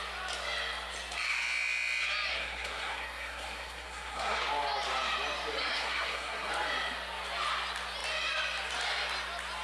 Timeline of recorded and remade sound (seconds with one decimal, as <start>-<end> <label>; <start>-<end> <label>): 0.0-2.3 recorded; 2.3-4.4 remade; 4.4-5.6 recorded; 5.6-6.5 remade; 6.5-9.6 recorded